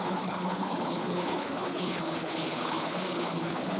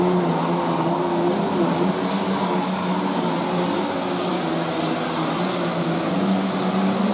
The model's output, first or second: first